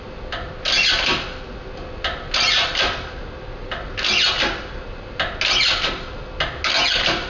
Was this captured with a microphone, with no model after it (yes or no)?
yes